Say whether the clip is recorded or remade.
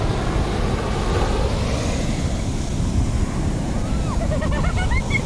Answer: recorded